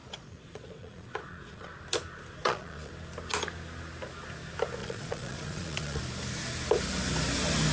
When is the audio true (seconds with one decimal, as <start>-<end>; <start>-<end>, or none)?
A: 1.7-2.4; 2.9-4.8; 6.0-7.7